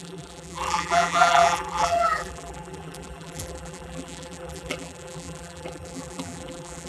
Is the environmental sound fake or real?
fake